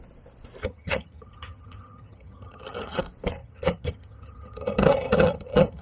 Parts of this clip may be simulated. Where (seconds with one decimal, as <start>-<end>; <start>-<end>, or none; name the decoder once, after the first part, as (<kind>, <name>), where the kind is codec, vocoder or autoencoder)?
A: 0.6-3.0 (vocoder, HiFi-GAN); 3.4-5.8